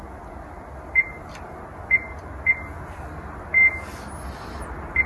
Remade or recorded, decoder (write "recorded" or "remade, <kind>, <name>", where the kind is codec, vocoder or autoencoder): recorded